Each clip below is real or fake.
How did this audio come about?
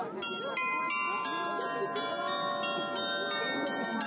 real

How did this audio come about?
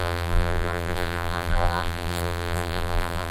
fake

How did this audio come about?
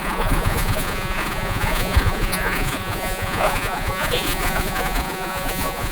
fake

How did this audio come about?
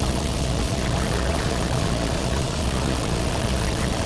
fake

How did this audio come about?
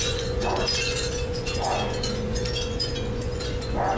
fake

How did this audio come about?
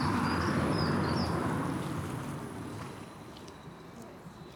real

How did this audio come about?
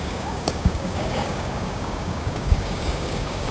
fake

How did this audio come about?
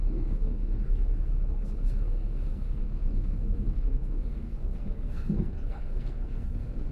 fake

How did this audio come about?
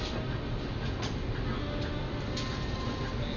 real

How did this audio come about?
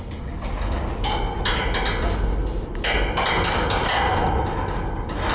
real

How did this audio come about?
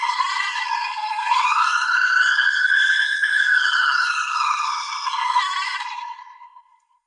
fake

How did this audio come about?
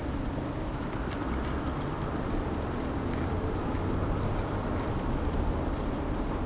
real